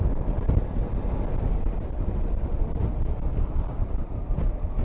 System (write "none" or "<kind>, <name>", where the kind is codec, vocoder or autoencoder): none